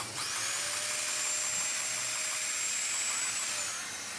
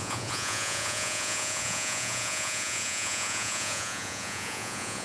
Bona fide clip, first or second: first